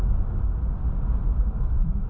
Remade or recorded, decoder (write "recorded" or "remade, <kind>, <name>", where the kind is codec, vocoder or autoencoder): recorded